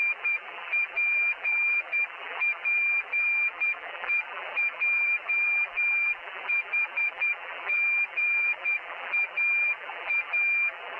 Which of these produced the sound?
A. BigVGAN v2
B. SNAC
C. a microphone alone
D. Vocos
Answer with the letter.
A